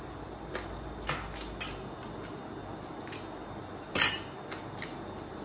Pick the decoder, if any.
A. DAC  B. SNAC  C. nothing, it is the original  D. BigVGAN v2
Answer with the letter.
C